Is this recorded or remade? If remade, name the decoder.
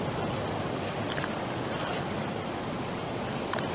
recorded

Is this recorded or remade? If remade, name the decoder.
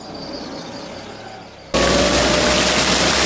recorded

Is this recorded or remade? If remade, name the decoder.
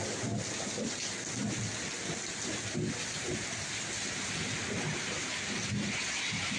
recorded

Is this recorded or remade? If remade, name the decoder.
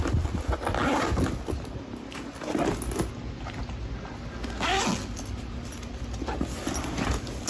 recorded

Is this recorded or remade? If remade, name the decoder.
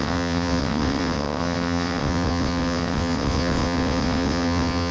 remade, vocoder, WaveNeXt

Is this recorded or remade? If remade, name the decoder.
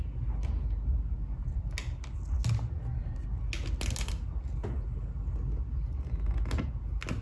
recorded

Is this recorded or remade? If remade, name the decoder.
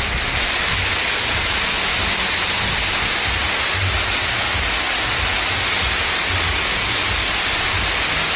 recorded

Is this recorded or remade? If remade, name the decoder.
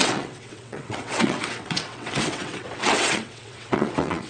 remade, vocoder, WaveNeXt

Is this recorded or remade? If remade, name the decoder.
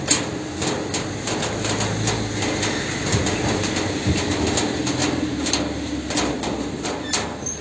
recorded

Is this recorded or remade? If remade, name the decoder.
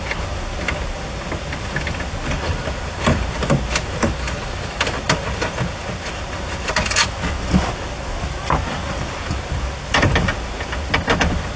recorded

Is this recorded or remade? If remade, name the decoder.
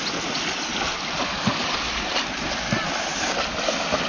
recorded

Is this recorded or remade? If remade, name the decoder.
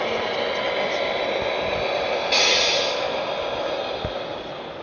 recorded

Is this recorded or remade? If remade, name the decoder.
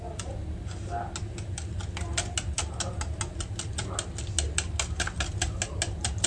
recorded